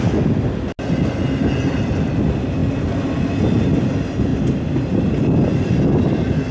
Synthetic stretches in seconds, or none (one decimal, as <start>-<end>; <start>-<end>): none